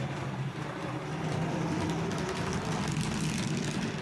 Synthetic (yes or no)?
no